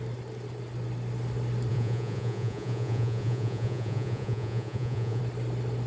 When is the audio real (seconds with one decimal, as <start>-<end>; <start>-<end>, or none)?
0.0-1.7; 5.2-5.9